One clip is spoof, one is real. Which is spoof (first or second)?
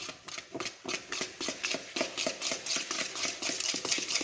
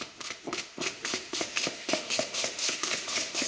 second